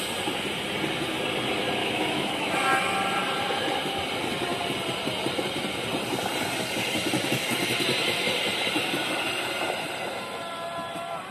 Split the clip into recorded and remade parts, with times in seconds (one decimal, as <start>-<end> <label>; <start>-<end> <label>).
0.0-1.8 recorded; 1.8-2.5 remade; 2.5-11.3 recorded